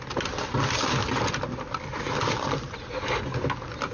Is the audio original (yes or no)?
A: yes